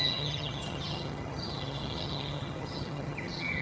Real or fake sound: fake